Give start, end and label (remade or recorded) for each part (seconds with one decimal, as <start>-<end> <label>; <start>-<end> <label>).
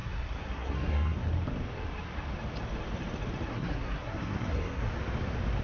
0.0-1.3 remade; 1.3-3.5 recorded; 3.5-4.9 remade; 4.9-5.6 recorded